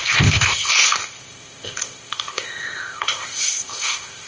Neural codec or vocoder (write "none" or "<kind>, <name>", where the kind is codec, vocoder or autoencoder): codec, ZipCodec